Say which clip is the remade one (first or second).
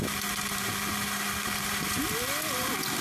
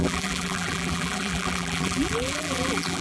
second